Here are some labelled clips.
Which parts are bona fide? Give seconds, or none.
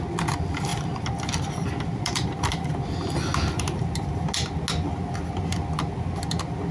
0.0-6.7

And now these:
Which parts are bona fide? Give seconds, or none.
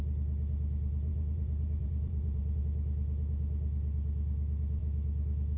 0.0-1.1; 2.6-5.6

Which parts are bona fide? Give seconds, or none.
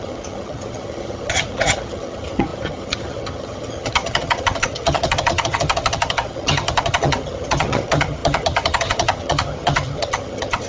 none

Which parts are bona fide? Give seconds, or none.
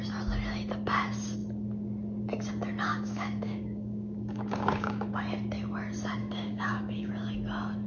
0.0-2.9; 5.1-6.2; 7.1-7.9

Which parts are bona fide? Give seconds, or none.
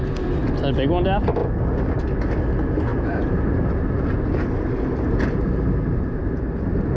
0.0-2.9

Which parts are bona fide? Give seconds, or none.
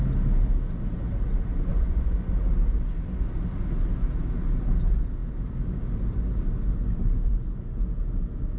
0.0-1.7; 2.3-8.6